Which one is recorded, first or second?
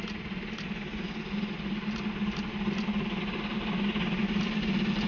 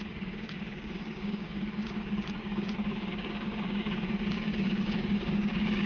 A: first